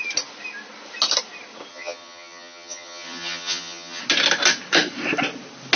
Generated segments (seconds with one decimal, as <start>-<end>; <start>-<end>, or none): 1.7-4.0